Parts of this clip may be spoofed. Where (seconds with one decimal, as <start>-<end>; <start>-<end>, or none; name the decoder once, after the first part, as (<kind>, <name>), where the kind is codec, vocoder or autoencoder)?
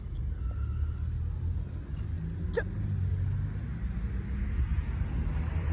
none